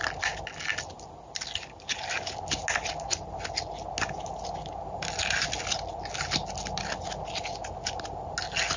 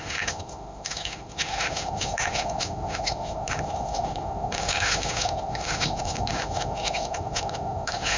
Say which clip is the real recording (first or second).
first